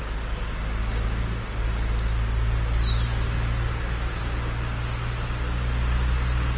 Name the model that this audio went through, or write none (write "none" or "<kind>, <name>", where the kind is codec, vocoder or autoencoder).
none